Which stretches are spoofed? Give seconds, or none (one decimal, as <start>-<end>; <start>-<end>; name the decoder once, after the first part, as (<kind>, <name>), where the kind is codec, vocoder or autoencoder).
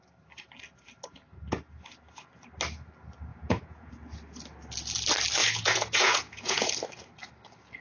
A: 3.3-3.9 (vocoder, Vocos); 5.4-6.7